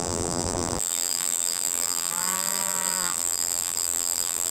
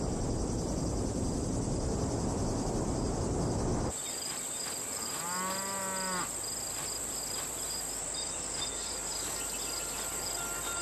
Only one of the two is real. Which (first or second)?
second